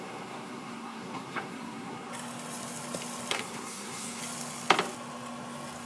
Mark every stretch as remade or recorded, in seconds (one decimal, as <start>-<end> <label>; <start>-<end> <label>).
0.0-2.1 remade; 2.1-3.3 recorded; 3.3-4.2 remade; 4.2-5.9 recorded